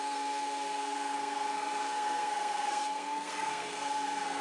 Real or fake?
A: fake